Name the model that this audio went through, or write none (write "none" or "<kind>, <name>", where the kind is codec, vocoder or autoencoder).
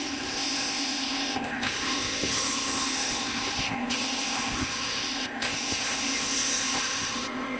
codec, ZipCodec